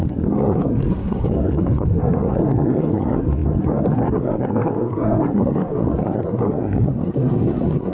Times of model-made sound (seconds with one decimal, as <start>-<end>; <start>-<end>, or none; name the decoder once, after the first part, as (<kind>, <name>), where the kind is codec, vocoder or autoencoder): 0.0-7.9 (codec, SNAC)